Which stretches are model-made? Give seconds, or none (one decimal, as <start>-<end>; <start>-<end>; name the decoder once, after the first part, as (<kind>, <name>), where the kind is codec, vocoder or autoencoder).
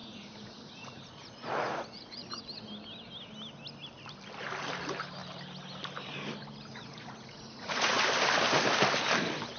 0.0-2.4 (vocoder, Vocos); 6.7-8.0